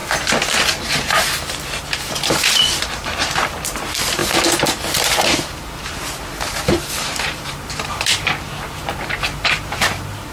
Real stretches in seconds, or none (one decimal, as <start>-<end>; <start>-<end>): 0.0-0.8

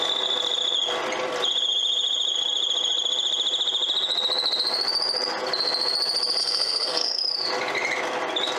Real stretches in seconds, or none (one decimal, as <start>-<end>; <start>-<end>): 0.0-6.4; 7.2-8.6

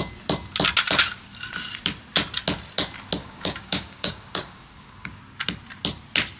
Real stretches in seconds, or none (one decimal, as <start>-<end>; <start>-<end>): 0.0-3.2; 5.2-6.4